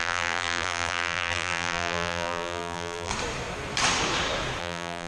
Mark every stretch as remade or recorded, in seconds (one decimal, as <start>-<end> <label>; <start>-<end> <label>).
0.0-3.1 remade; 3.1-4.6 recorded; 4.6-5.1 remade